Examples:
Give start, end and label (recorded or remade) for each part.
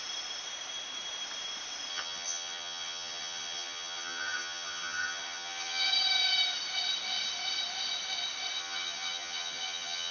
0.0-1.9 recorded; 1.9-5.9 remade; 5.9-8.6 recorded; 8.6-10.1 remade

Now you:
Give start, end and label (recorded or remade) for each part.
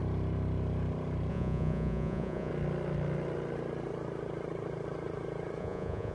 0.0-1.3 recorded; 1.3-2.5 remade; 2.5-5.6 recorded; 5.6-6.1 remade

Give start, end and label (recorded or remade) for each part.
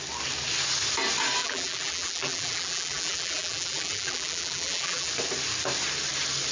0.0-1.4 recorded; 1.4-5.1 remade; 5.1-6.5 recorded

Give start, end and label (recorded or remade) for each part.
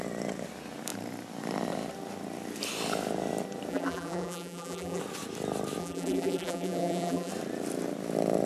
0.0-3.7 recorded; 3.7-5.0 remade; 5.0-5.8 recorded; 5.8-7.3 remade; 7.3-8.5 recorded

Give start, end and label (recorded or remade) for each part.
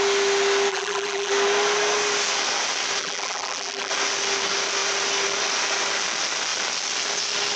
0.0-0.7 recorded; 0.7-1.3 remade; 1.3-3.0 recorded; 3.0-3.9 remade; 3.9-7.6 recorded